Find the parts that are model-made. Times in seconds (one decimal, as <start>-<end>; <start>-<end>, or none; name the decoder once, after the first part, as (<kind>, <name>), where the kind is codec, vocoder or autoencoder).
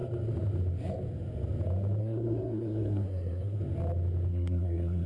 2.0-3.6 (codec, SNAC); 4.3-5.1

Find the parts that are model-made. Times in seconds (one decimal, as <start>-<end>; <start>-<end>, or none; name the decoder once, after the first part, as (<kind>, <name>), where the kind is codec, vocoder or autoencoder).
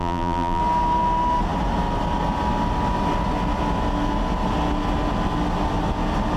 0.0-0.6 (vocoder, BigVGAN v2)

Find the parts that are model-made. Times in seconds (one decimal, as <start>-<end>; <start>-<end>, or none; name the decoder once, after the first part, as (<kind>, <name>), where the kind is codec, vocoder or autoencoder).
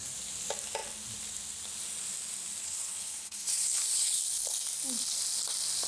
2.6-4.2 (codec, HILCodec)